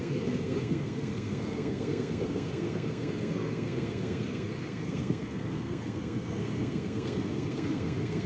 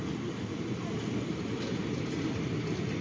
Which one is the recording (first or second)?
second